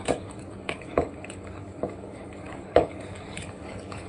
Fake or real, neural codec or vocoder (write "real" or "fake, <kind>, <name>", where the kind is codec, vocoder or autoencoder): fake, codec, DAC